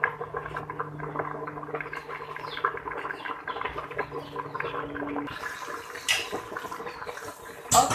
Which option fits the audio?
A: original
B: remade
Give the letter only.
A